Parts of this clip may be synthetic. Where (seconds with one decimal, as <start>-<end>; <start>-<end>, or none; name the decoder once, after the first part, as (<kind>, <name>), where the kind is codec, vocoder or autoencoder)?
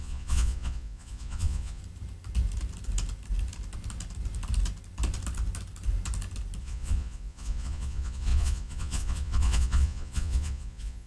0.0-1.8 (vocoder, Vocos); 6.6-11.1